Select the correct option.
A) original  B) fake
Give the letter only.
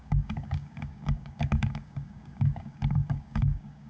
B